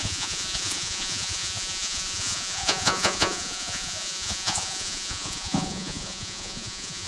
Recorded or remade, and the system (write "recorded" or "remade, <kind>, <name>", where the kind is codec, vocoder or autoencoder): remade, vocoder, Vocos